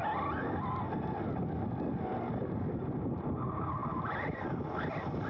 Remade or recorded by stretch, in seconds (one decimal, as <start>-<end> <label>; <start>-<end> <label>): 0.0-5.3 recorded